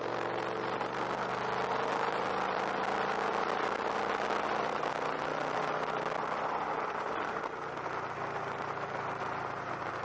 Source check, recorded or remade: recorded